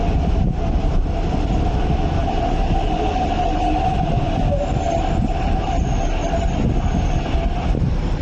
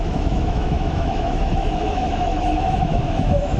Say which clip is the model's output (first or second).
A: second